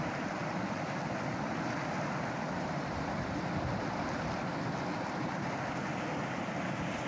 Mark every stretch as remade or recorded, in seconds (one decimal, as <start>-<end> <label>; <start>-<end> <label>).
0.0-7.1 recorded